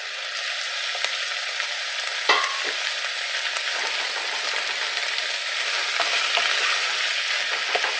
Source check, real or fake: real